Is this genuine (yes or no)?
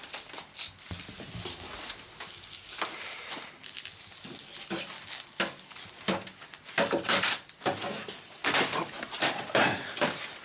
yes